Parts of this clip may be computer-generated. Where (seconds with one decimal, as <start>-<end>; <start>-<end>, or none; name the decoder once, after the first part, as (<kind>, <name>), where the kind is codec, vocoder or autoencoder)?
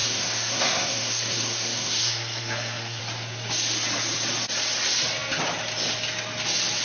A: 0.0-3.0 (codec, SNAC)